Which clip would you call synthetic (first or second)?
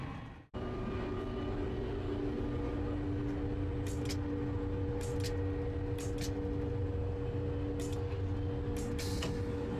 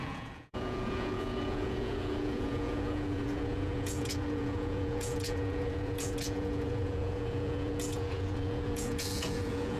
second